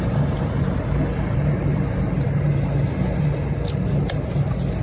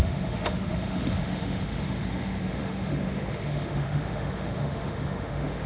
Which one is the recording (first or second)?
first